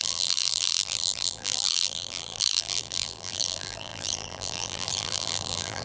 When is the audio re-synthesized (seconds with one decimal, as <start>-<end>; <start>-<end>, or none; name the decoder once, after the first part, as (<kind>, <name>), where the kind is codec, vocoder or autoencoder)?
0.0-5.8 (vocoder, BigVGAN v2)